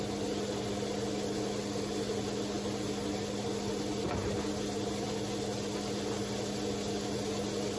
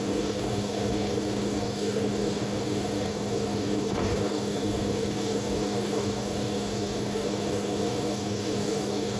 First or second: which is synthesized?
second